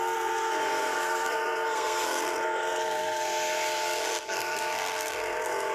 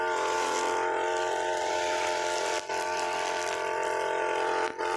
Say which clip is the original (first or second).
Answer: second